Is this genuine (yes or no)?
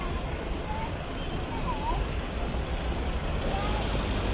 yes